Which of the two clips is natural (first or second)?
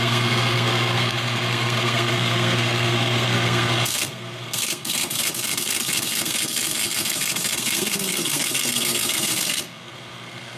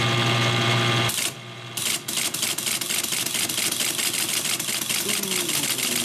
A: second